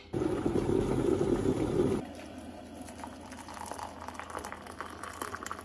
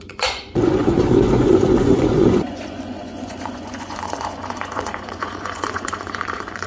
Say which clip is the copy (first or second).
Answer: second